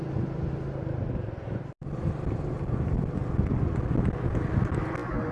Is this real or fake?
real